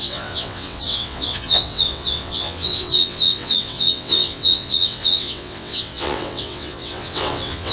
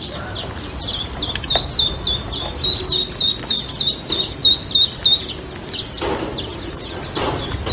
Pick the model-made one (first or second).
first